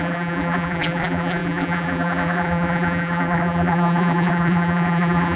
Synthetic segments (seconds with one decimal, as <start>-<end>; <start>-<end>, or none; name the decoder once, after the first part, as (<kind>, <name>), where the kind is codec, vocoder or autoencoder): 0.0-5.3 (vocoder, BigVGAN v2)